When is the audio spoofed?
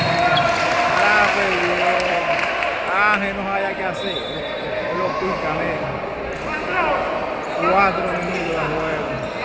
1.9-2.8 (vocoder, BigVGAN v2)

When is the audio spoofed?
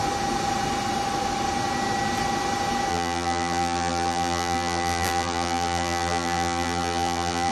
2.9-7.5 (vocoder, BigVGAN v2)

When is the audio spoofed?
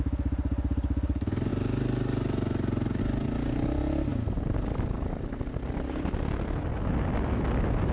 1.5-3.0 (vocoder, BigVGAN v2)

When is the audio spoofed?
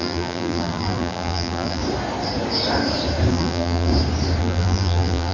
0.0-1.8 (vocoder, BigVGAN v2); 3.3-3.9; 4.4-5.3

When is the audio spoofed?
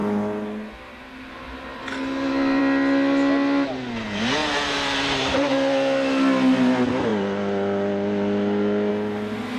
4.4-5.5 (vocoder, BigVGAN v2)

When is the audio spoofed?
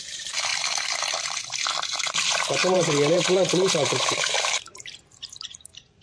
0.0-0.5 (vocoder, BigVGAN v2); 2.1-6.0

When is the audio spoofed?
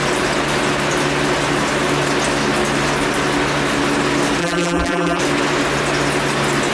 4.4-5.2 (vocoder, BigVGAN v2)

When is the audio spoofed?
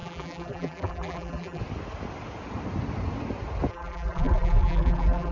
0.0-1.6 (vocoder, BigVGAN v2); 3.7-5.3